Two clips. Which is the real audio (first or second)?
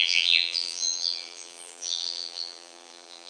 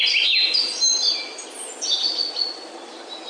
second